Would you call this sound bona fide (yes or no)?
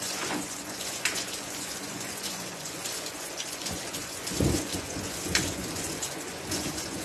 no